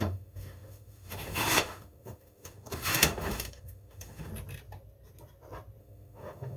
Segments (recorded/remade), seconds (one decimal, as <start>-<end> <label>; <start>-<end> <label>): 0.0-4.3 remade; 4.3-5.8 recorded; 5.8-6.6 remade